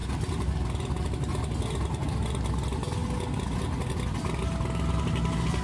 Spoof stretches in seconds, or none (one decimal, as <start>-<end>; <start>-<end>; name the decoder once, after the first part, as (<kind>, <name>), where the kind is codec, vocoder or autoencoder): none